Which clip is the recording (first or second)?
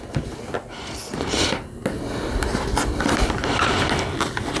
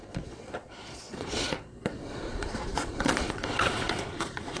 first